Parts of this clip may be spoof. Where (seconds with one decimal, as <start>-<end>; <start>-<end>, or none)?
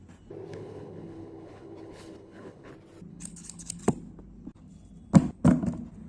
0.5-2.7; 3.1-3.8